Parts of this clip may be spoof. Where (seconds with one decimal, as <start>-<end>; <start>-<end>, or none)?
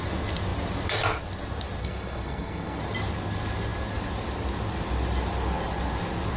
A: 1.8-2.8